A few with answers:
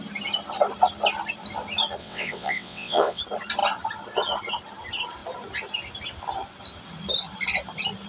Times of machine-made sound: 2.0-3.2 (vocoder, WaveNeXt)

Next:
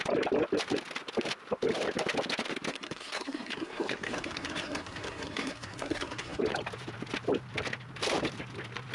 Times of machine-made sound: 2.7-6.4 (codec, SNAC)